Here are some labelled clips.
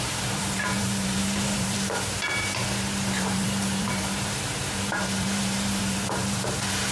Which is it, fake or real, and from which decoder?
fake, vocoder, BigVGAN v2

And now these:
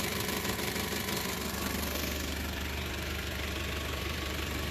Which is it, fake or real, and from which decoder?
fake, vocoder, BigVGAN v2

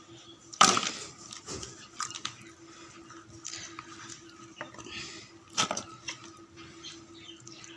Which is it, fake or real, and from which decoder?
fake, vocoder, BigVGAN v2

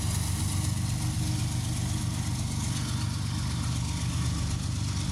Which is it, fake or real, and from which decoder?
real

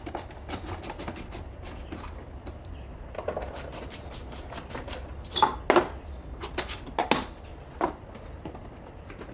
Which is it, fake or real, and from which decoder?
real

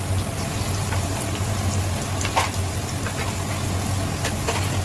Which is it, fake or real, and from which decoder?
real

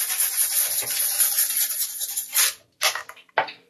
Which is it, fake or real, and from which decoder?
real